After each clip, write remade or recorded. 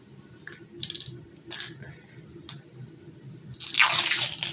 recorded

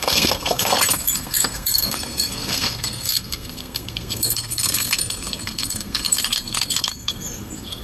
remade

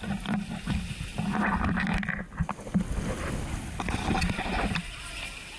recorded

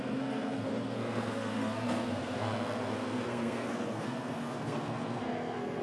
remade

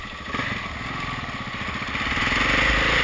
recorded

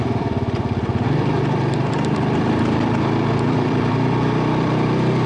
remade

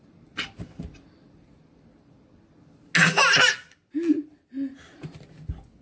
recorded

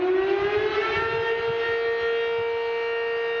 recorded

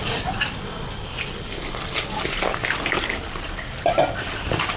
recorded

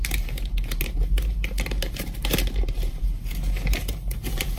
remade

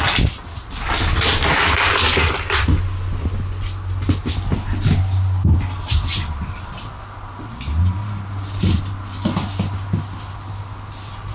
recorded